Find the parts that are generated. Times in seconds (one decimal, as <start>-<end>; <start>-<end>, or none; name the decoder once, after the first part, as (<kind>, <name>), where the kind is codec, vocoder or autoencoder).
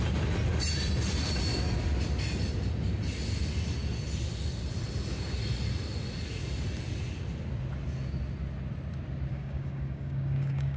9.3-10.8 (codec, DAC)